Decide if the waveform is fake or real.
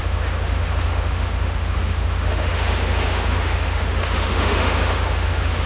fake